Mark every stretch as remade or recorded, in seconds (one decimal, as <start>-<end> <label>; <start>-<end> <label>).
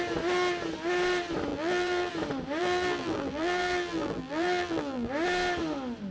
0.0-1.5 recorded; 1.5-2.1 remade; 2.1-2.6 recorded; 2.6-5.1 remade; 5.1-6.1 recorded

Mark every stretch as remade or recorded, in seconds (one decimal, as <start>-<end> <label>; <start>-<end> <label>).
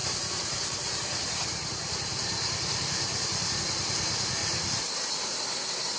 0.0-3.6 remade; 3.6-4.4 recorded; 4.4-5.0 remade; 5.0-6.0 recorded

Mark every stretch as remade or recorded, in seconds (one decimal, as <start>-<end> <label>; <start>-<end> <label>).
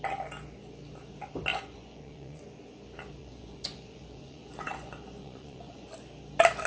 0.0-1.5 recorded; 1.5-2.4 remade; 2.4-3.2 recorded; 3.2-5.9 remade; 5.9-6.7 recorded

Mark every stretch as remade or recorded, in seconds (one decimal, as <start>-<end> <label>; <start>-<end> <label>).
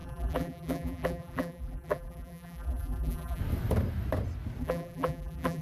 0.0-3.4 remade; 3.4-4.6 recorded; 4.6-5.6 remade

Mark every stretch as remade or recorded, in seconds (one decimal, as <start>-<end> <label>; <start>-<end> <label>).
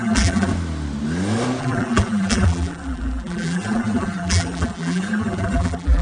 0.0-0.5 remade; 0.5-1.6 recorded; 1.6-6.0 remade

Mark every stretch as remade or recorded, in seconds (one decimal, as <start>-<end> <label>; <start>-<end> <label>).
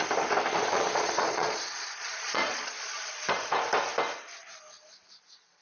0.0-0.6 recorded; 0.6-3.2 remade; 3.2-5.6 recorded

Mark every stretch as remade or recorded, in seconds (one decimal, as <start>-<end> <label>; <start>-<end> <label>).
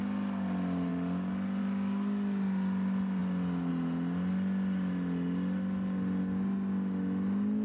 0.0-7.6 recorded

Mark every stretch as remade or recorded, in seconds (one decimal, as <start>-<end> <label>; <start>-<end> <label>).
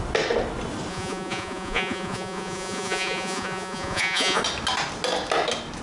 0.0-0.9 recorded; 0.9-4.4 remade; 4.4-5.8 recorded